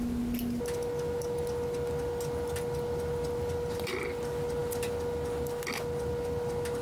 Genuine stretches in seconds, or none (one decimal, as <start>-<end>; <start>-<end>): 0.0-6.8